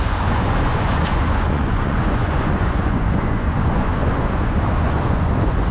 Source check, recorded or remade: remade